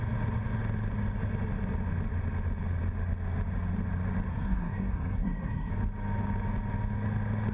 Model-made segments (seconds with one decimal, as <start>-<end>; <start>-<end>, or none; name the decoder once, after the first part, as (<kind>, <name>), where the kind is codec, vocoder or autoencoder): 4.3-5.7 (codec, SNAC)